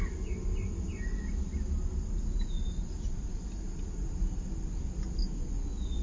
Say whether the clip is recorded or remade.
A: recorded